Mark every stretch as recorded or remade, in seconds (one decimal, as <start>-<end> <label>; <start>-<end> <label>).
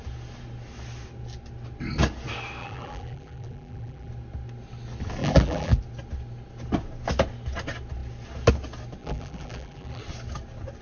0.0-2.6 recorded; 2.6-4.1 remade; 4.1-5.2 recorded; 5.2-5.8 remade; 5.8-9.0 recorded; 9.0-10.0 remade; 10.0-10.8 recorded